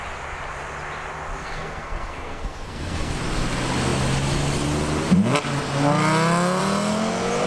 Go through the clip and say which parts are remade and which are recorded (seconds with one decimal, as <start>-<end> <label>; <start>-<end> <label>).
0.0-1.4 recorded; 1.4-3.2 remade; 3.2-7.5 recorded